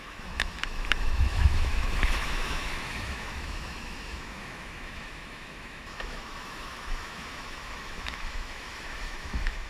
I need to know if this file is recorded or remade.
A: remade